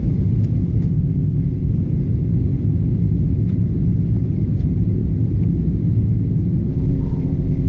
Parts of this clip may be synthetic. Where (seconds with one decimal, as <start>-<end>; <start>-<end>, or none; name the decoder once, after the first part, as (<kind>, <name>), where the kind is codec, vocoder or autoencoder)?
0.9-1.7 (codec, ZipCodec); 6.7-7.7